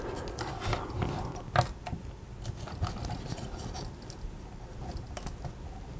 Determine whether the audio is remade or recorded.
recorded